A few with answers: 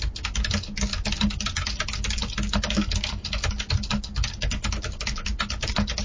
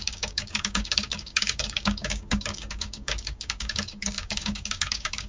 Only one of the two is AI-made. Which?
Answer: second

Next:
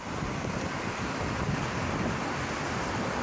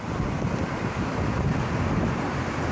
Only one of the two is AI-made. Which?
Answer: first